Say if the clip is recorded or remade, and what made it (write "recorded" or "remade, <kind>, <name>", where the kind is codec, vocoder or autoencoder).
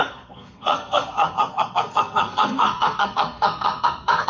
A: remade, codec, SNAC